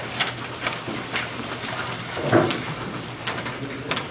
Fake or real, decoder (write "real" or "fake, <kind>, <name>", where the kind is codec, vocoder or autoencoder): real